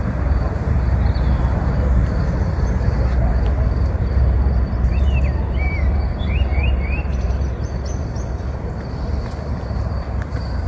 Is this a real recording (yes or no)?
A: no